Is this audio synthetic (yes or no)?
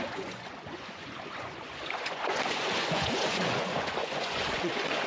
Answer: yes